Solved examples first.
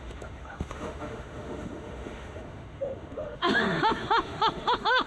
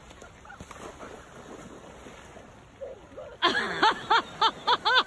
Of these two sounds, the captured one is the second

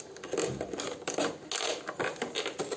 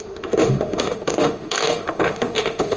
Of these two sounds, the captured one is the first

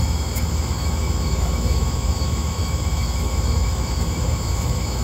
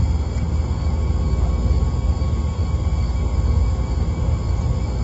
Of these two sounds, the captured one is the second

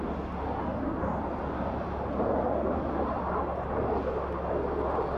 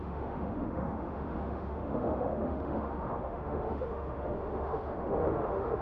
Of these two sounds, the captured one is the first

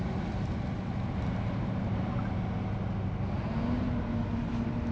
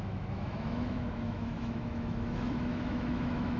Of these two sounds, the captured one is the first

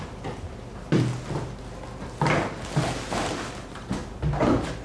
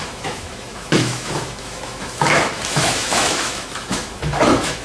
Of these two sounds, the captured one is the first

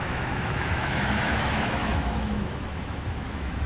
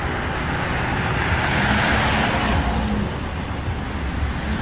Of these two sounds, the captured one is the second